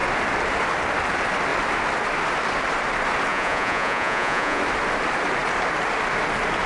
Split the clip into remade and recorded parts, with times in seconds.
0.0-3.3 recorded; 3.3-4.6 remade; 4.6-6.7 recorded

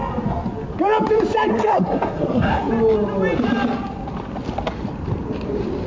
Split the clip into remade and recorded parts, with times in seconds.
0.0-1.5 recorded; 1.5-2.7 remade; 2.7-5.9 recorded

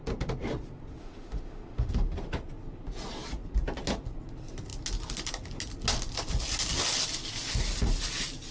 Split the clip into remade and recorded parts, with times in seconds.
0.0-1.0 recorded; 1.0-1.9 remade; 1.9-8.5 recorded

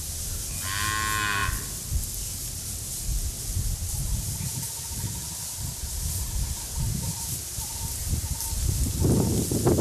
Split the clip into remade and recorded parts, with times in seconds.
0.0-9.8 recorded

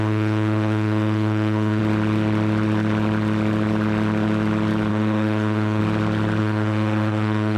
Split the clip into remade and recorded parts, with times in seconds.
0.0-1.8 remade; 1.8-4.9 recorded; 4.9-5.8 remade; 5.8-6.4 recorded; 6.4-7.6 remade

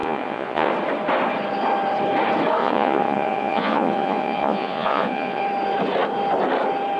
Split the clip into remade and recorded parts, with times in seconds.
0.0-0.7 remade; 0.7-2.6 recorded; 2.6-5.4 remade; 5.4-7.0 recorded

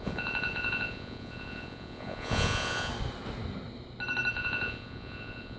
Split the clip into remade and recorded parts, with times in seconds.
0.0-2.9 remade; 2.9-4.3 recorded; 4.3-5.6 remade